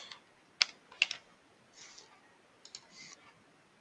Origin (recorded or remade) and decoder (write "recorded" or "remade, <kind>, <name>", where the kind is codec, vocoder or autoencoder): recorded